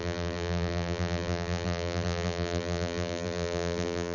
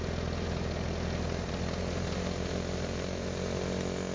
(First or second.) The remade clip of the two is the first